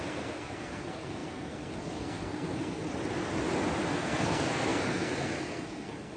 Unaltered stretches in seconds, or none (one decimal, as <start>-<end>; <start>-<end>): 2.8-3.9